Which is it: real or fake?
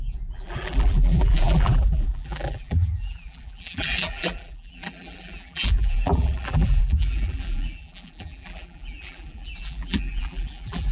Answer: fake